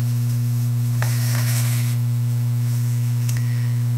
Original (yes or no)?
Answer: no